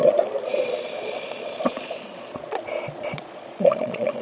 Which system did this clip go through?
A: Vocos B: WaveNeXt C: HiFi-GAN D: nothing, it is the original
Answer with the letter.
A